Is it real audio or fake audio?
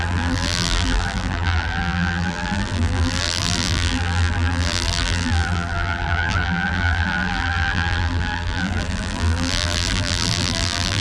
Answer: fake